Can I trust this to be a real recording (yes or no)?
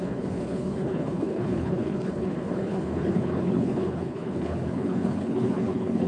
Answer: no